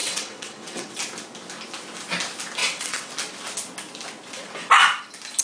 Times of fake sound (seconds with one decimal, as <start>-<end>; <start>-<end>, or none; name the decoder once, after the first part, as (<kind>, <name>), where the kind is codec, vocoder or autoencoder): 0.0-1.0 (vocoder, WaveNeXt); 2.6-3.1